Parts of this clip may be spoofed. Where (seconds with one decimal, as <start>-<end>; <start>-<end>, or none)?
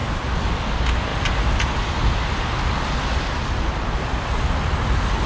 none